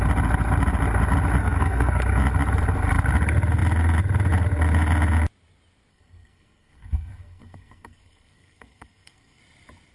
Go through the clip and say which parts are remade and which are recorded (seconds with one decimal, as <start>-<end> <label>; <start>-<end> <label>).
0.0-1.4 recorded; 1.4-2.0 remade; 2.0-5.9 recorded; 5.9-9.4 remade; 9.4-9.9 recorded